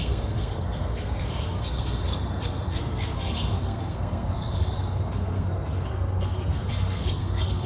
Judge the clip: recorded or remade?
remade